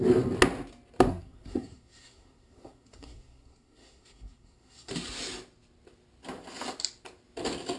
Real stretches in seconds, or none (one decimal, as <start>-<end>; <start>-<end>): 0.0-1.1; 4.9-7.8